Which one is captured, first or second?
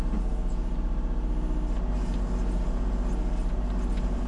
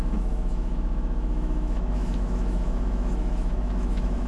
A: first